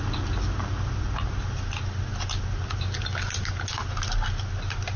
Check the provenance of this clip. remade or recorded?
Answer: recorded